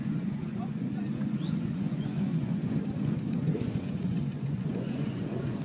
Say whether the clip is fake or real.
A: fake